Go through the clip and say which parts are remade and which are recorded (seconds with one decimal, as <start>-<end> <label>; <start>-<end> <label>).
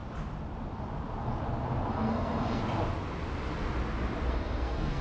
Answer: 0.0-1.9 recorded; 1.9-2.6 remade; 2.6-4.3 recorded; 4.3-5.0 remade